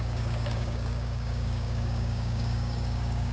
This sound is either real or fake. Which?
fake